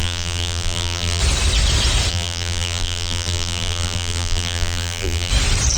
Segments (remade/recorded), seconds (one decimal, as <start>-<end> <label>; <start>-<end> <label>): 0.0-1.2 remade; 1.2-2.1 recorded; 2.1-5.3 remade; 5.3-5.8 recorded